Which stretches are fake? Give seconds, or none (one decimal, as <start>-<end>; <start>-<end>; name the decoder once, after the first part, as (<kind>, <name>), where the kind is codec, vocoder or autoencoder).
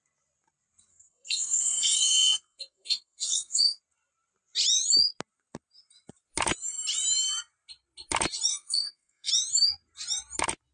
0.9-3.8 (codec, SNAC); 8.5-9.3